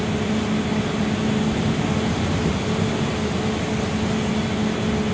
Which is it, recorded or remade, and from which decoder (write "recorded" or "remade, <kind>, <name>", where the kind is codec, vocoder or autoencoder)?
recorded